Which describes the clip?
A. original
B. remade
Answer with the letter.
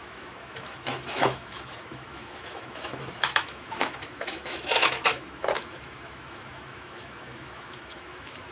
B